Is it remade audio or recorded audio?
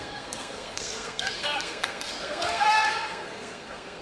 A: remade